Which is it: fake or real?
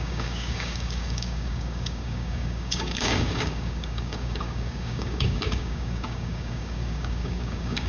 fake